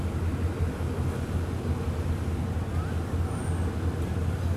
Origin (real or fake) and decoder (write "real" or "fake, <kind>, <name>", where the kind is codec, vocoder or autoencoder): real